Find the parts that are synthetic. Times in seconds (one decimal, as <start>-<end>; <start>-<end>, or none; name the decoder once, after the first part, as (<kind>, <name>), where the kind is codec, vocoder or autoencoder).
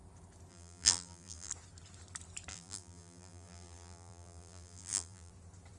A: 0.5-1.5 (vocoder, BigVGAN v2); 2.5-5.3